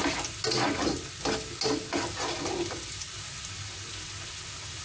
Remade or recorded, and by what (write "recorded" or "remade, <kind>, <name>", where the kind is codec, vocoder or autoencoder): recorded